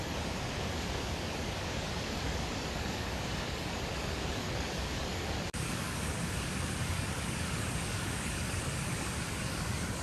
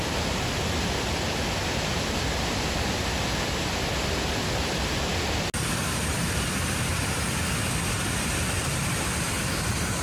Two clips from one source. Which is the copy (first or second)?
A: first